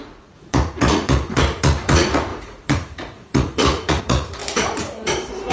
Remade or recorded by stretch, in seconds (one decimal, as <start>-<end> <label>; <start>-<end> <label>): 0.0-4.4 remade; 4.4-5.5 recorded